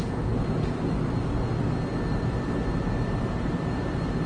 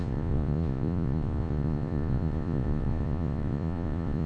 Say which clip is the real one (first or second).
first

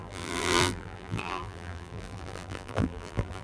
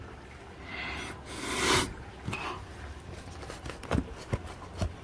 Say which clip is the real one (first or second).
second